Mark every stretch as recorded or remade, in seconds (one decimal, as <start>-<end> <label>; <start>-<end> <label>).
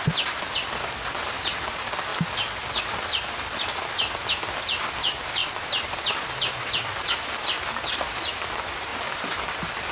0.0-9.9 recorded